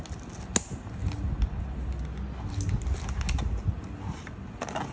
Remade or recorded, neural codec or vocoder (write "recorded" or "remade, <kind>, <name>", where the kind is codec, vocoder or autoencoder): recorded